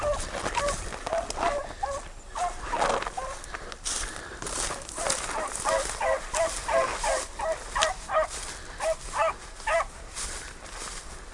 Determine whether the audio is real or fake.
real